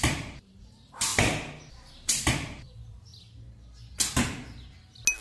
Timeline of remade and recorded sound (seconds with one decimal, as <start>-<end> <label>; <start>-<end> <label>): 0.0-1.1 remade; 1.1-1.7 recorded; 1.7-3.1 remade; 3.1-5.2 recorded